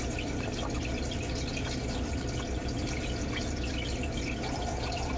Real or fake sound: real